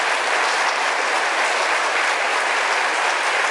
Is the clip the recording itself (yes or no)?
yes